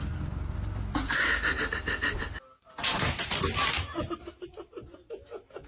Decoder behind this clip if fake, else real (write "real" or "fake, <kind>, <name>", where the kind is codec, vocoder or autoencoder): real